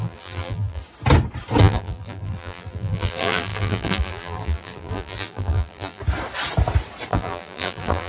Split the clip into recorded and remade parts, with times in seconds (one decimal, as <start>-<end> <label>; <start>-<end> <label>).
0.0-0.8 remade; 0.8-1.6 recorded; 1.6-6.0 remade; 6.0-7.1 recorded; 7.1-8.1 remade